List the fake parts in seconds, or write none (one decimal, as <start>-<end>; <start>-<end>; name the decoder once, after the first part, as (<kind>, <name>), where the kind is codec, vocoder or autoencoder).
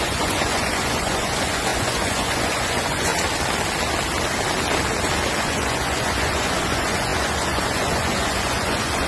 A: 0.0-3.1 (vocoder, Vocos); 5.4-9.1